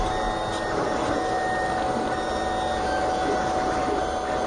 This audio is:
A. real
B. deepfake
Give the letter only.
A